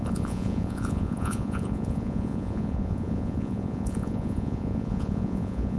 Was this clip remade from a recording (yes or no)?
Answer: yes